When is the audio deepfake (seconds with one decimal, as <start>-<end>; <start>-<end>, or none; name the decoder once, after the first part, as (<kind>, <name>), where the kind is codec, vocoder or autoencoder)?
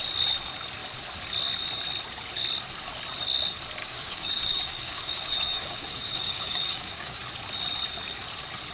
3.8-7.2 (codec, DAC)